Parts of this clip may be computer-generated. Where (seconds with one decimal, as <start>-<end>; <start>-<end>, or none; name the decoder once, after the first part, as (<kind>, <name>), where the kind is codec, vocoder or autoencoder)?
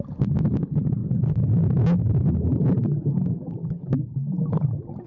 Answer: none